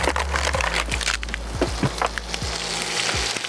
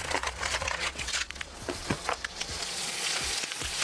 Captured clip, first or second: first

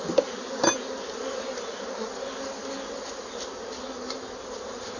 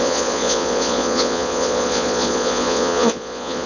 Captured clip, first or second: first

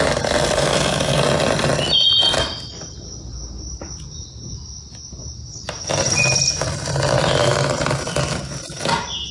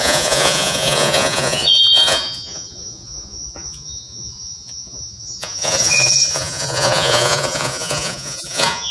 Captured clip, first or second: first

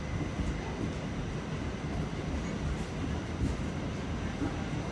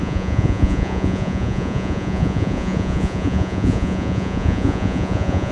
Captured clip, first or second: first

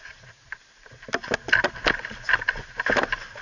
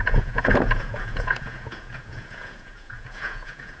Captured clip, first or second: first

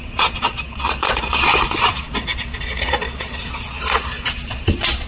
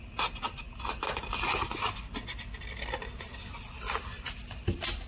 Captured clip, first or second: second